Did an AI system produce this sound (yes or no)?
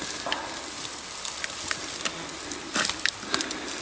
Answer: no